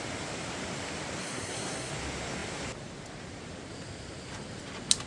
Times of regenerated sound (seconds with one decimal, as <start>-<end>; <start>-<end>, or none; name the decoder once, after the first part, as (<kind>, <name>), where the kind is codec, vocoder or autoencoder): 1.2-1.9 (codec, SNAC)